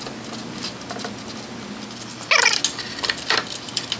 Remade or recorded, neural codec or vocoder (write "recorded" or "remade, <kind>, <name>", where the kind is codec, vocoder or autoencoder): recorded